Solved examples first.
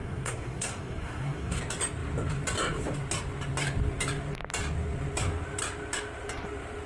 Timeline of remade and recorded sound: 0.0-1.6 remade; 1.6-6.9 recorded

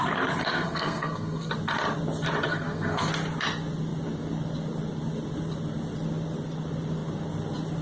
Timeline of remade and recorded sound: 0.0-0.4 recorded; 0.4-1.5 remade; 1.5-2.5 recorded; 2.5-3.1 remade; 3.1-7.8 recorded

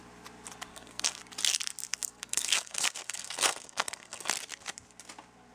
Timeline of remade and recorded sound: 0.0-0.7 recorded; 0.7-1.2 remade; 1.2-1.9 recorded; 1.9-4.3 remade; 4.3-5.5 recorded

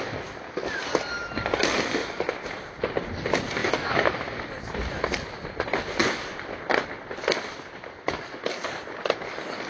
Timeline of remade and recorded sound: 0.0-3.6 recorded; 3.6-4.4 remade; 4.4-9.7 recorded

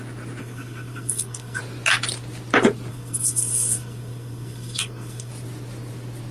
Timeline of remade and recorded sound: 0.0-0.4 recorded; 0.4-1.6 remade; 1.6-2.9 recorded; 2.9-5.3 remade; 5.3-6.3 recorded

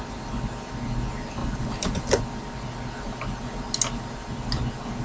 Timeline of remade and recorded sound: 0.0-1.4 recorded; 1.4-2.2 remade; 2.2-5.0 recorded